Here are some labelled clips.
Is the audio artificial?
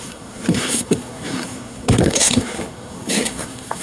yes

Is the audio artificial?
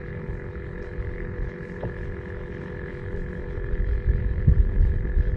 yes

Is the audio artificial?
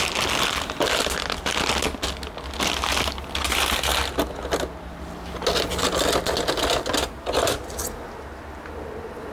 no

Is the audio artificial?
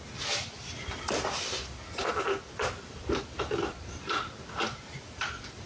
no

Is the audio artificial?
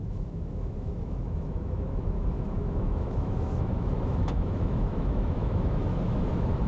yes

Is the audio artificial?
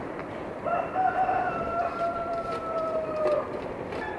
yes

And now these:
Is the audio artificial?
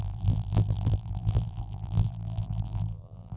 yes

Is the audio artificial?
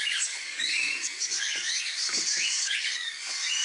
yes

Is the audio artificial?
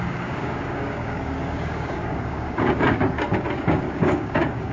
yes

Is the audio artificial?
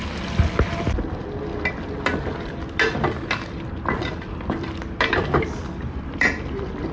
no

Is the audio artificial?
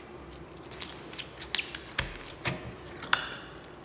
no